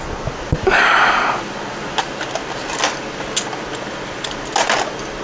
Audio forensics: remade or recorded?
recorded